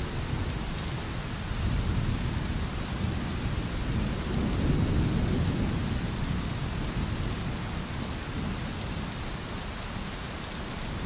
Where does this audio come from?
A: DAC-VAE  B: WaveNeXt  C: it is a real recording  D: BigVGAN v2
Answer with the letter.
C